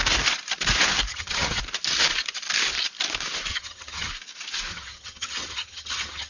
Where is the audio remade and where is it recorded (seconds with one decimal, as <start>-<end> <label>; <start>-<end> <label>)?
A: 0.0-1.1 recorded; 1.1-1.6 remade; 1.6-3.5 recorded; 3.5-4.1 remade; 4.1-4.7 recorded; 4.7-6.3 remade